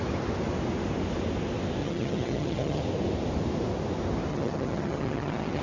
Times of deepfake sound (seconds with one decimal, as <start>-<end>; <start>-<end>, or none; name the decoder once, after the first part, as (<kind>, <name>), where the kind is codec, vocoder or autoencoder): 1.8-2.8 (vocoder, HiFi-GAN); 4.3-5.6

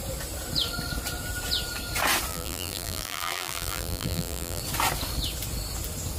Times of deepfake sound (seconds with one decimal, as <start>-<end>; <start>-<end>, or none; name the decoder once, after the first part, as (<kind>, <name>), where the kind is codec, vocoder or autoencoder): 2.3-4.6 (vocoder, BigVGAN v2)

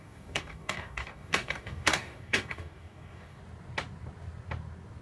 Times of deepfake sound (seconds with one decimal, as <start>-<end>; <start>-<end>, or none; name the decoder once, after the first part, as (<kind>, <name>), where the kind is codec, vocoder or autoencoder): 0.0-3.4 (codec, DAC)

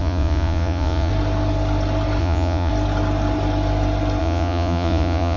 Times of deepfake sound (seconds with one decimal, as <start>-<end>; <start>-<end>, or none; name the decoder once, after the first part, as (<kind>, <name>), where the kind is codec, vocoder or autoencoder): 0.0-1.1 (vocoder, Vocos); 2.2-2.7; 4.2-5.4

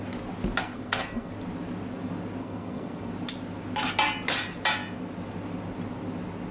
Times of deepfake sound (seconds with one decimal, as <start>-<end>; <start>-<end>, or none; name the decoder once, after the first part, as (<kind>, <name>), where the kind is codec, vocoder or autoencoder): 0.6-1.3 (codec, SNAC); 2.4-3.1

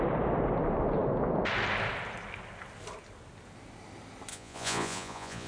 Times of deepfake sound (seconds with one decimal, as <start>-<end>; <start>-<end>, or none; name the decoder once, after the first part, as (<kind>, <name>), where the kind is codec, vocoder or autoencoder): 4.3-5.5 (vocoder, Vocos)

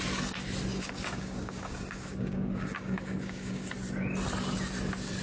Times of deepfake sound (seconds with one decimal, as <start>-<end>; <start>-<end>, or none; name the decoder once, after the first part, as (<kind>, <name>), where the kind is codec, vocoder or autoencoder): 0.7-3.7 (codec, DAC)

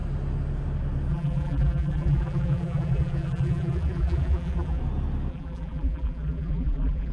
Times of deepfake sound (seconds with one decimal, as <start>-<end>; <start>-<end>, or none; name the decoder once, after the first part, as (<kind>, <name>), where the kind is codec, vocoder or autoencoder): 1.1-4.8 (vocoder, BigVGAN v2); 5.3-7.1